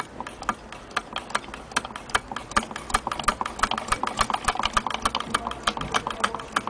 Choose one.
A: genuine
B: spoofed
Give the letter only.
A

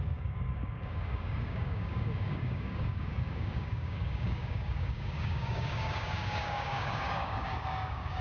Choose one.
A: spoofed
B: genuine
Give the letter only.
A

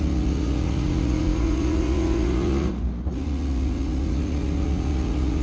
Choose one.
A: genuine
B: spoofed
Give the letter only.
B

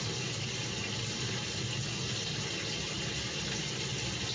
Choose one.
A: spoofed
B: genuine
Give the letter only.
B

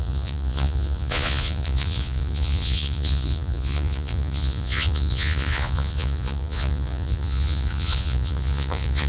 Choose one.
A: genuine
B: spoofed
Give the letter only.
B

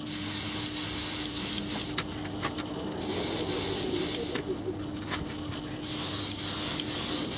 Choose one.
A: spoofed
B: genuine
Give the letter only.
B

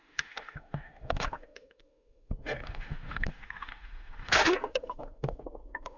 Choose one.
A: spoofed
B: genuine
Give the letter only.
A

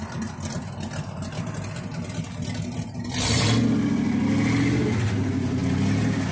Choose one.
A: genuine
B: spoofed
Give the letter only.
A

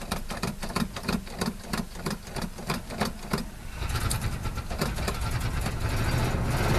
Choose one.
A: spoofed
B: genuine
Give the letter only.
B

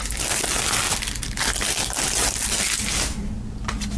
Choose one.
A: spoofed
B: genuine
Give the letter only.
B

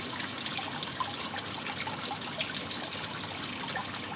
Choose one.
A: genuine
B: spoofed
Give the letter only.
A